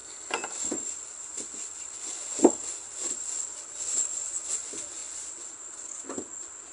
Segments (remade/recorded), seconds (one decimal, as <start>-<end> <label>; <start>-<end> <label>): 0.0-6.7 recorded